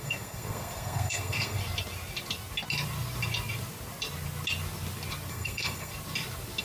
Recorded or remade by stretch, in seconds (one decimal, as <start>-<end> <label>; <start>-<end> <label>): 0.0-1.6 remade; 1.6-5.3 recorded; 5.3-5.9 remade; 5.9-6.6 recorded